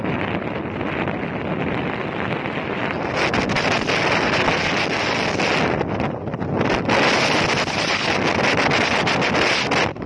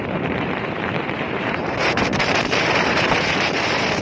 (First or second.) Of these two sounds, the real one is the first